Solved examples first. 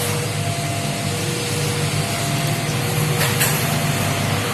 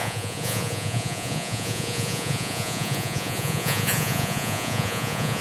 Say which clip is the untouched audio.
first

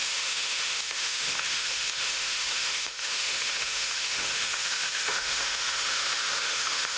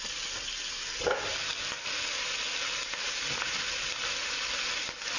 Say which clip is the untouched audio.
second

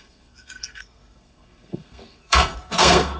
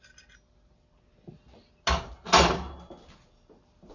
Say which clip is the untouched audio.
second